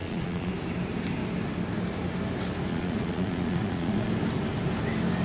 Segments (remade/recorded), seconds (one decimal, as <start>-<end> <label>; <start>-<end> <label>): 0.0-0.5 remade; 0.5-2.7 recorded; 2.7-4.1 remade; 4.1-5.2 recorded